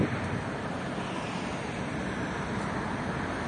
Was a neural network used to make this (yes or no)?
no